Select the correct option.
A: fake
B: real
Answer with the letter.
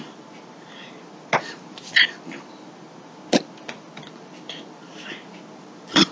B